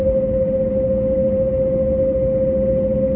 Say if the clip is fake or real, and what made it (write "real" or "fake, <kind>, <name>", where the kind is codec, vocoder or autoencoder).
real